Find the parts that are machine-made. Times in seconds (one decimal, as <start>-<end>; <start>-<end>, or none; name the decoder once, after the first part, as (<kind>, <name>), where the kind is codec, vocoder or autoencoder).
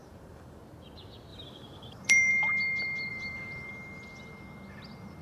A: 0.0-0.6 (vocoder, BigVGAN v2); 1.3-2.3; 3.1-3.7